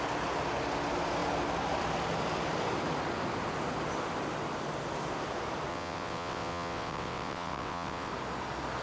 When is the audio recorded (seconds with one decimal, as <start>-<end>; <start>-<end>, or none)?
0.0-5.7; 8.1-8.8